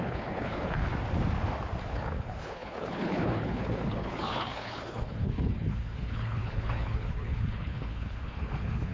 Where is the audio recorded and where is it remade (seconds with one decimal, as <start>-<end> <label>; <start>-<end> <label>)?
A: 0.0-0.9 remade; 0.9-1.8 recorded; 1.8-8.9 remade